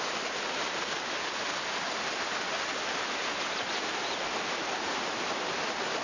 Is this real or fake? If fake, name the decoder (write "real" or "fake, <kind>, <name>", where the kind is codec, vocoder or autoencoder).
real